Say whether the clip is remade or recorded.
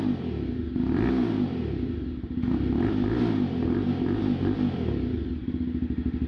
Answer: recorded